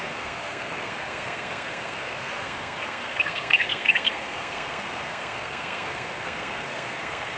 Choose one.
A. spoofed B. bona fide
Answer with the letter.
A